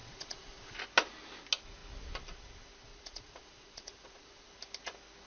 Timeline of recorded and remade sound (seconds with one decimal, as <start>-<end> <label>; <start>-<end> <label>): 0.0-0.8 remade; 0.8-2.9 recorded; 2.9-4.5 remade; 4.5-5.3 recorded